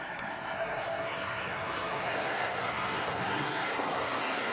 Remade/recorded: remade